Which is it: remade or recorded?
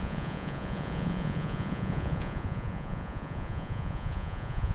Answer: remade